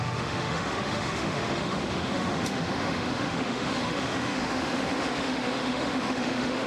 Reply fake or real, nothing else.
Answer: fake